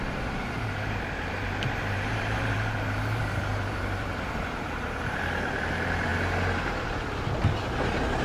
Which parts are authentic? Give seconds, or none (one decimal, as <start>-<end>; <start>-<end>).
6.1-8.2